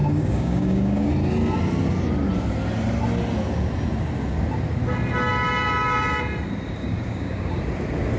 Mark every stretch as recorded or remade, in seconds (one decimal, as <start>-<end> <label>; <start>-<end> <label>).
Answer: 0.0-1.1 remade; 1.1-6.8 recorded; 6.8-7.5 remade; 7.5-8.2 recorded